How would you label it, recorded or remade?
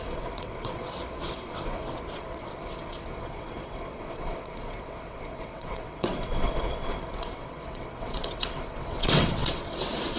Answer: remade